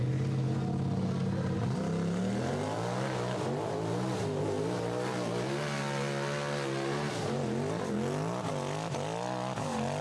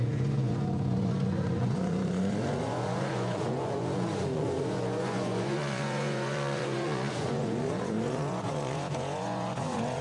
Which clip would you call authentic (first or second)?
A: first